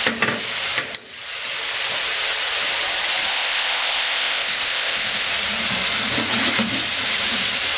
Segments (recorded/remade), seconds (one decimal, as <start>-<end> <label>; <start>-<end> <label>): 0.0-3.3 recorded; 3.3-5.3 remade; 5.3-7.8 recorded